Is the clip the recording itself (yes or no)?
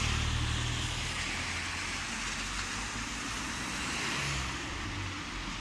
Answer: yes